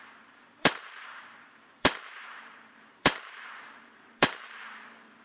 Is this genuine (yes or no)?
no